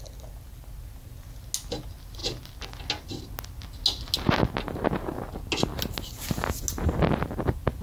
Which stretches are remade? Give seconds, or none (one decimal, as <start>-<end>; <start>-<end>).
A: none